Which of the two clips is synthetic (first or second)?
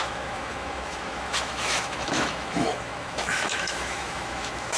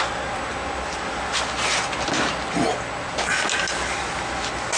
first